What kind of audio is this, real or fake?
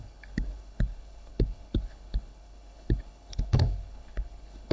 fake